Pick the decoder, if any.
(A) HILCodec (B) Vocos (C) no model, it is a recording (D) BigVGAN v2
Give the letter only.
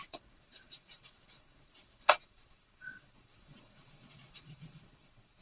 B